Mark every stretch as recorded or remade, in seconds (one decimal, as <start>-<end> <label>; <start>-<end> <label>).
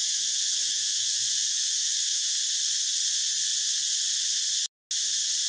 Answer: 0.0-2.4 remade; 2.4-5.5 recorded